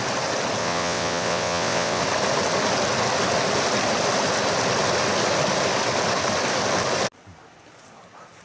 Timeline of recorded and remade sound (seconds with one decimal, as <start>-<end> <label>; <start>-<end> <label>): 0.0-0.6 recorded; 0.6-2.0 remade; 2.0-8.4 recorded

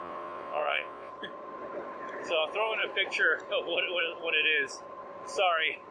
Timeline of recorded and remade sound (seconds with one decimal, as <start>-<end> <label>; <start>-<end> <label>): 0.0-1.1 remade; 1.1-5.9 recorded

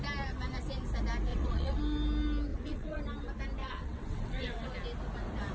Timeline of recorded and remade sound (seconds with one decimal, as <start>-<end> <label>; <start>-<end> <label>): 0.0-1.3 recorded; 1.3-1.8 remade; 1.8-2.5 recorded; 2.5-3.0 remade; 3.0-3.6 recorded; 3.6-4.7 remade; 4.7-5.5 recorded

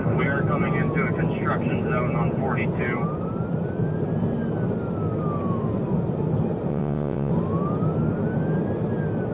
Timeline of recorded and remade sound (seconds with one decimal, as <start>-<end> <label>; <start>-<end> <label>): 0.0-6.7 recorded; 6.7-7.3 remade; 7.3-9.3 recorded

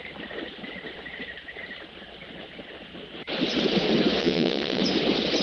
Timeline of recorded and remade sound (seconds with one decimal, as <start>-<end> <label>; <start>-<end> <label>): 0.0-4.2 recorded; 4.2-4.8 remade; 4.8-5.4 recorded

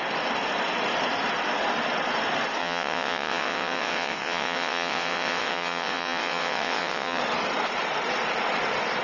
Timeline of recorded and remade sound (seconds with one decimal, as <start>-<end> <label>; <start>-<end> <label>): 0.0-2.6 recorded; 2.6-7.2 remade; 7.2-9.0 recorded